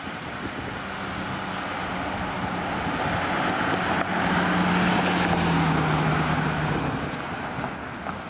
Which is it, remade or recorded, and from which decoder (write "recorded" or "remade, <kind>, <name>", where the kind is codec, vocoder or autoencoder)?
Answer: recorded